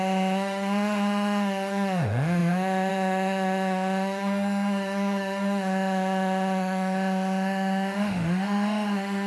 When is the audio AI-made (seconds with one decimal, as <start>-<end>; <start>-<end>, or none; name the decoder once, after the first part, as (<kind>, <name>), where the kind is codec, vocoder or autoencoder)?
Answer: 0.0-9.3 (autoencoder, DAC-VAE)